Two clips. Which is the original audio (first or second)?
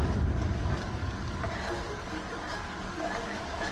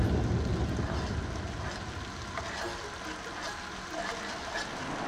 second